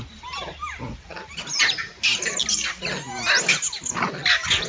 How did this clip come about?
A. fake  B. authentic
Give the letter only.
B